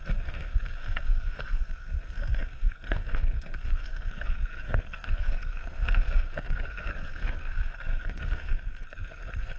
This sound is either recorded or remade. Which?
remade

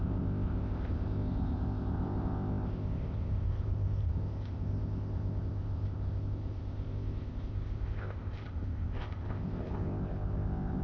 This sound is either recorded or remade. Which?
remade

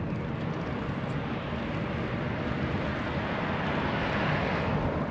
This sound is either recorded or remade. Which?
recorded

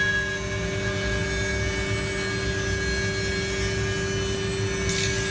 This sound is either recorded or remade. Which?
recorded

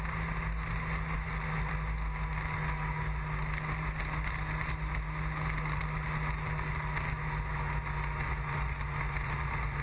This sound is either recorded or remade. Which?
recorded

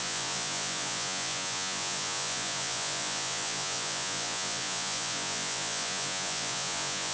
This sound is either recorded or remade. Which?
remade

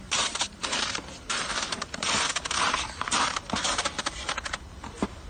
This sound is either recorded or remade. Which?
remade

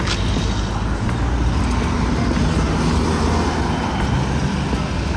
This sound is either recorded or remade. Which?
recorded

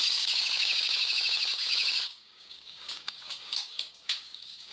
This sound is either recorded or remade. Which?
remade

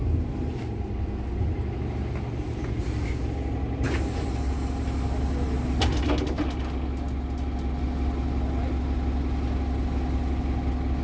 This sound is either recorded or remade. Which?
recorded